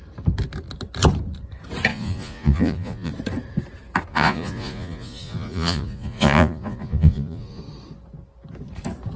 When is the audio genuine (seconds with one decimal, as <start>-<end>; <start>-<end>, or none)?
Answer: 0.0-1.9; 3.1-4.1; 7.6-9.2

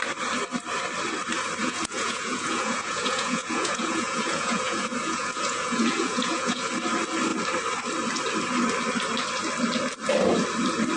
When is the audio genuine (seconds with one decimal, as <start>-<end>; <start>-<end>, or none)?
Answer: 0.0-1.6; 6.7-11.0

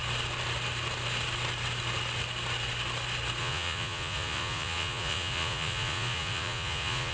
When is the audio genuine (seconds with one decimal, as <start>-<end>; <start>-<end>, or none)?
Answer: 0.0-3.4

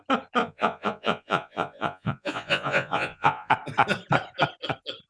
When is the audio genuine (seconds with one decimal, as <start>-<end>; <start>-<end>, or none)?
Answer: 0.0-0.4; 3.5-5.1

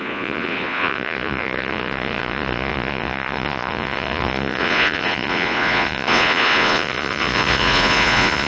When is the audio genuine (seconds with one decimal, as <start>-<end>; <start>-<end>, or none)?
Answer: none

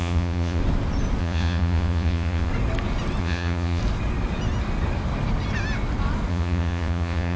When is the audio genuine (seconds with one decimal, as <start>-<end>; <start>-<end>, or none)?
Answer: 0.6-1.2; 2.5-3.2; 3.8-6.3